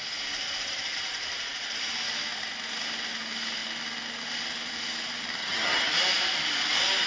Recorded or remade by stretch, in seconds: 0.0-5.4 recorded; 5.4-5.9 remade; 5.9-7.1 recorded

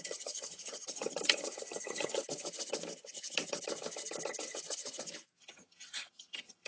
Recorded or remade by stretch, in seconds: 0.0-2.2 remade; 2.2-5.4 recorded; 5.4-6.7 remade

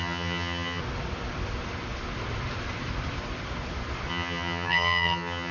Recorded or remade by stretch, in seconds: 0.0-0.8 remade; 0.8-4.1 recorded; 4.1-5.5 remade

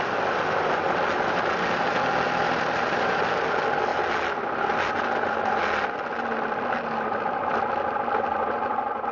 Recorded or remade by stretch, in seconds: 0.0-9.1 recorded

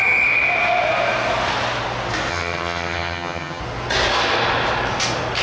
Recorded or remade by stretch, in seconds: 0.0-2.3 recorded; 2.3-3.6 remade; 3.6-5.4 recorded

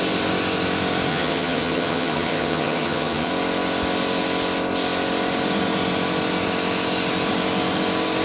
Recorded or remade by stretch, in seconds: 0.0-1.1 recorded; 1.1-3.3 remade; 3.3-8.2 recorded

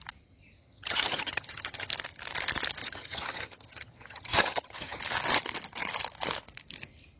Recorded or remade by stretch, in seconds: 0.0-0.6 recorded; 0.6-1.9 remade; 1.9-2.8 recorded; 2.8-5.0 remade; 5.0-7.2 recorded

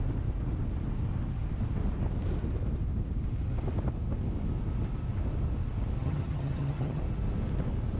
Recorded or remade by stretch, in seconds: 0.0-6.0 recorded; 6.0-7.0 remade; 7.0-8.0 recorded